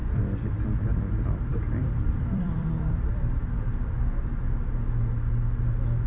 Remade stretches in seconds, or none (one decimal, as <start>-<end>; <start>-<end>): 0.0-0.8; 1.5-3.4